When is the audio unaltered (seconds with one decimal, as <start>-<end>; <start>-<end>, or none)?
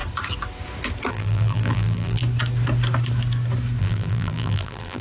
0.0-1.1; 2.2-3.8